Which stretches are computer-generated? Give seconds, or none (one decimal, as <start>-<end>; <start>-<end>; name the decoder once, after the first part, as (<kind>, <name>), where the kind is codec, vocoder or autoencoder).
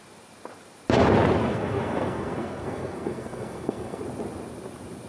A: 1.4-4.0 (codec, SNAC)